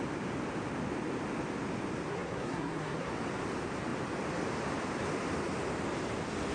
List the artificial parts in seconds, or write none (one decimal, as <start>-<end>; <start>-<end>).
2.1-3.1